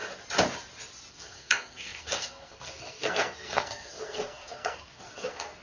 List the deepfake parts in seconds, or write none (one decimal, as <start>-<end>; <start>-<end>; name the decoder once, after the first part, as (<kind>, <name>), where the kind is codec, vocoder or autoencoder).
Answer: 1.1-5.6 (codec, SNAC)